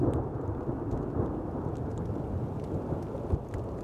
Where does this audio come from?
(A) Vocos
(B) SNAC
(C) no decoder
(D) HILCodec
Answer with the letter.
C